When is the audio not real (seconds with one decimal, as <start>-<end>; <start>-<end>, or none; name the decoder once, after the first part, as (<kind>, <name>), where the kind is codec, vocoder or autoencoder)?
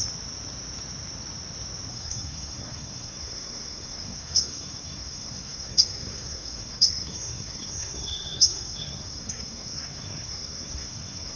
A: 1.9-11.4 (codec, SNAC)